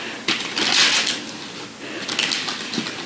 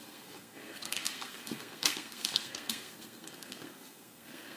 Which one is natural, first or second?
first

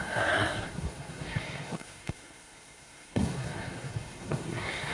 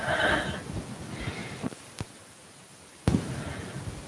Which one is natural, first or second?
second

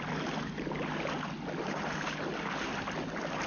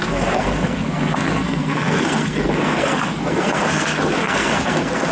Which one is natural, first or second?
first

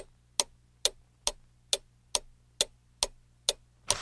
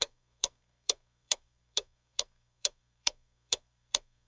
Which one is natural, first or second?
first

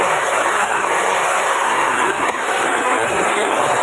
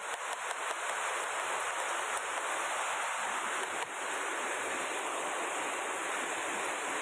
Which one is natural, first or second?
second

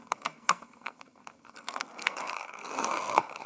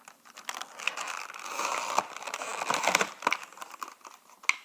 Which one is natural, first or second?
second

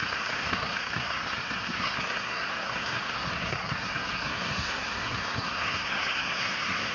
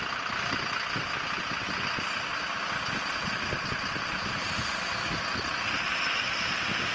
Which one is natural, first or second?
second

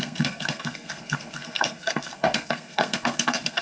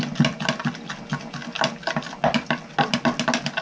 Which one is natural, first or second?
second